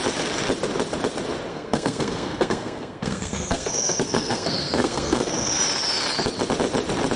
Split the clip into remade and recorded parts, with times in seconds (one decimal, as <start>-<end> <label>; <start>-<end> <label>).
0.0-1.5 recorded; 1.5-5.6 remade; 5.6-7.2 recorded